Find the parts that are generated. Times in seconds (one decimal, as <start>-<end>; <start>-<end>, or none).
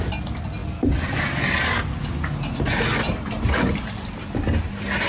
none